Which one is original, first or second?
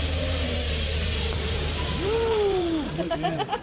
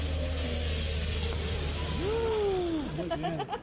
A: second